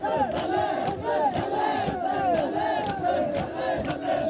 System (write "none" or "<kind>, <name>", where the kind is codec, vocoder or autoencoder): none